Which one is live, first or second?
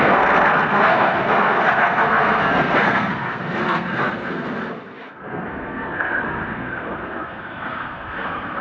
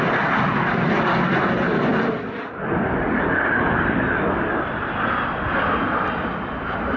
second